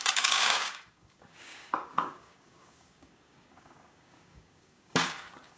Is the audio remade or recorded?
remade